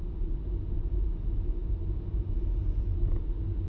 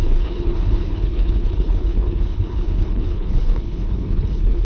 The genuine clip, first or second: first